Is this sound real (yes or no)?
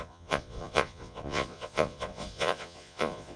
no